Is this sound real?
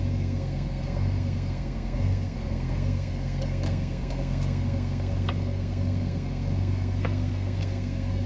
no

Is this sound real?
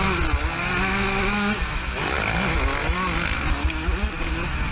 yes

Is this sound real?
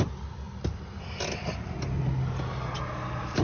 yes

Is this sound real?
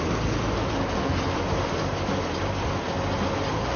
yes